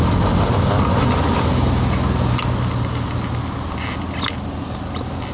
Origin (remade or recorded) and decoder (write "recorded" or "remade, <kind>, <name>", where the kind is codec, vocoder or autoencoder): recorded